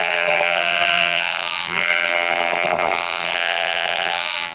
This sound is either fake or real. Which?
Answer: fake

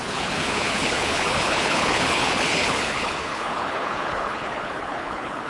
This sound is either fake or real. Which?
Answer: fake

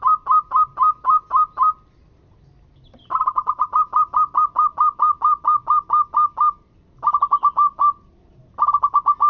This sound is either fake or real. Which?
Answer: real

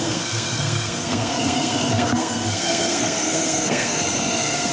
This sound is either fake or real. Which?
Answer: fake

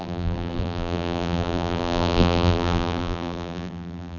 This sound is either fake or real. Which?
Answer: fake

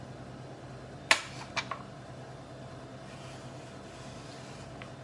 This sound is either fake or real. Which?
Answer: real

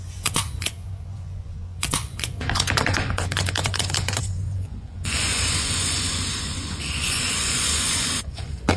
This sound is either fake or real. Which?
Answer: fake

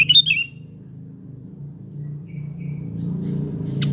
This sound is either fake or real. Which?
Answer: real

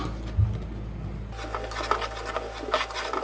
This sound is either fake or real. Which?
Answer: real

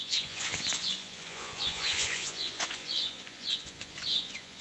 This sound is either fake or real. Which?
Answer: fake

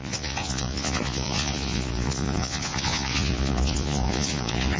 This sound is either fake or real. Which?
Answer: fake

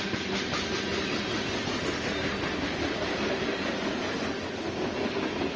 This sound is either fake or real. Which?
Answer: real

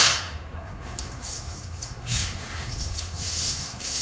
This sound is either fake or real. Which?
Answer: fake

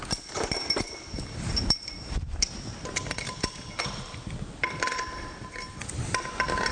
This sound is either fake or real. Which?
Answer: real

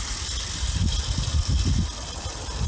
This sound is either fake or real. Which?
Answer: real